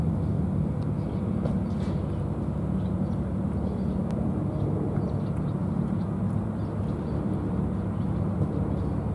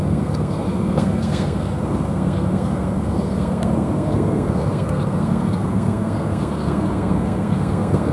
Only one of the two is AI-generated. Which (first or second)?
second